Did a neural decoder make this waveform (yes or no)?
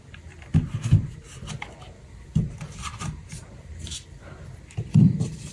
no